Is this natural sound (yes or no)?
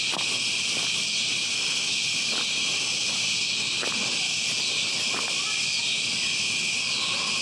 yes